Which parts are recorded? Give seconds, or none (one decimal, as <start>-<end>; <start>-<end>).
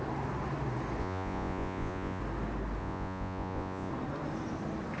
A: 0.0-1.0; 2.2-2.8; 3.9-5.0